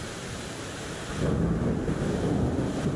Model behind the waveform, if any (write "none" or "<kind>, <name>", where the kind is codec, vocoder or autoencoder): none